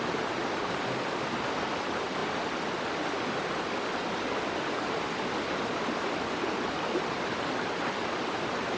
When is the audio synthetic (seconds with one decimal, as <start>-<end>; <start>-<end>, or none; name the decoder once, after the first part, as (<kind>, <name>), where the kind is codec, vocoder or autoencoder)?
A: none